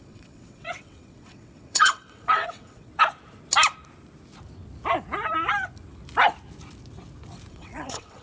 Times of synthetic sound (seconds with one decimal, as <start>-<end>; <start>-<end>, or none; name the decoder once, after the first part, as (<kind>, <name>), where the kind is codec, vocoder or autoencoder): 0.0-2.9 (vocoder, WaveNeXt); 7.5-8.2